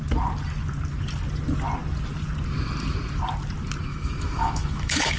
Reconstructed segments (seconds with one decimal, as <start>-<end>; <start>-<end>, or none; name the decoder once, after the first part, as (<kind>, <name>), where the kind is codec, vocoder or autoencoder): 3.9-5.2 (autoencoder, DAC-VAE)